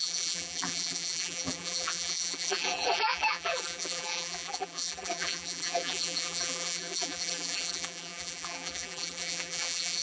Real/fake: fake